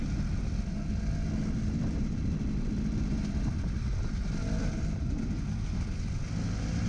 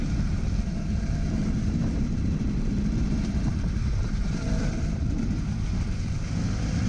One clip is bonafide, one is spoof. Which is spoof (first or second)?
second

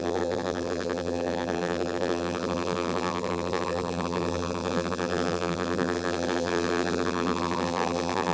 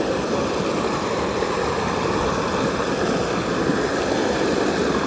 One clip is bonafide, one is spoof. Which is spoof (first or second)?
first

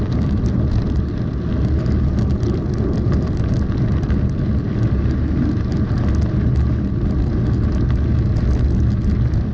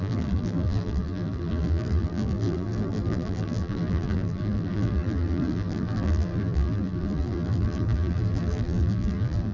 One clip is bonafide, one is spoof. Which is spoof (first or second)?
second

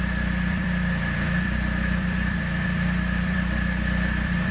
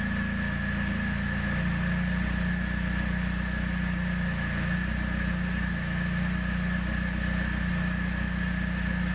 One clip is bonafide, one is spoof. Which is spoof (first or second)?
first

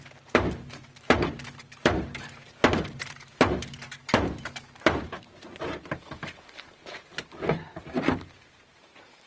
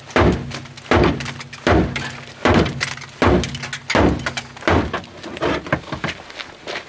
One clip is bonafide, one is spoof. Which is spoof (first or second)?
first